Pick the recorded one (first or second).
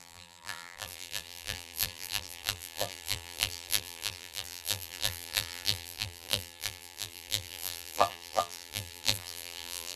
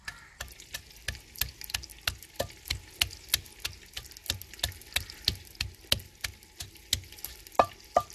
second